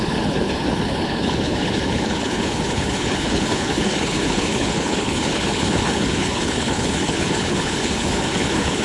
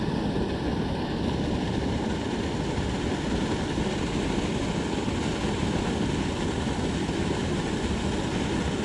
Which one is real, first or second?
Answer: second